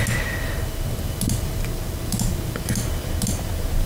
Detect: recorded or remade recorded